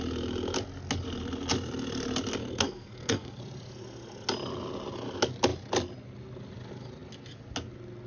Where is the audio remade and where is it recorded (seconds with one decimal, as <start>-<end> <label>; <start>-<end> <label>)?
0.0-2.4 recorded; 2.4-3.4 remade; 3.4-8.1 recorded